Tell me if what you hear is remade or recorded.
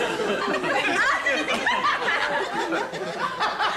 recorded